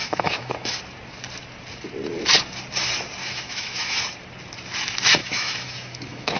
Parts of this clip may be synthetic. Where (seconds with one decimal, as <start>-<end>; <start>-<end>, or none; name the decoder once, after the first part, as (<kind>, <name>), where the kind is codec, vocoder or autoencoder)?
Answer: 0.0-0.8 (autoencoder, DAC-VAE); 3.2-4.0; 5.2-6.4